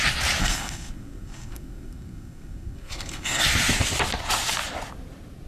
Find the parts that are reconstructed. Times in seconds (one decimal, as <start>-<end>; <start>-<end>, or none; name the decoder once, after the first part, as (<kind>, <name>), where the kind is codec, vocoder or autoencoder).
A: 0.4-3.4 (codec, SNAC)